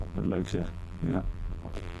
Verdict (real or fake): fake